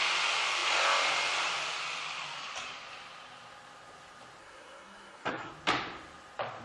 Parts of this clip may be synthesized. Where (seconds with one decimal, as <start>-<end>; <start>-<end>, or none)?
4.4-5.5